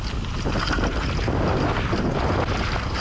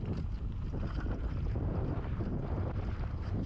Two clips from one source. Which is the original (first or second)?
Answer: first